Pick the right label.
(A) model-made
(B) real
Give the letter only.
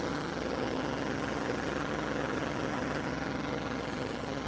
A